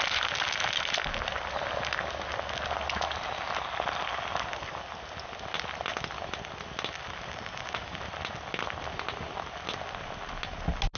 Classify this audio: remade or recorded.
recorded